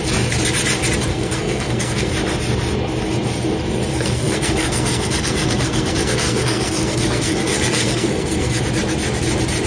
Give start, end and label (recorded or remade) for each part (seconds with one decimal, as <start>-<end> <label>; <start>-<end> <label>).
0.0-1.1 recorded; 1.1-2.1 remade; 2.1-3.9 recorded; 3.9-8.6 remade; 8.6-9.7 recorded